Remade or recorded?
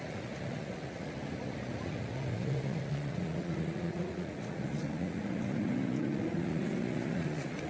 remade